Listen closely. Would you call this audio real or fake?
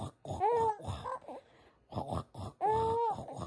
real